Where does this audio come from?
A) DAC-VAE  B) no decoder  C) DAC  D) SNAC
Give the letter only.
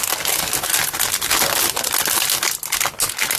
B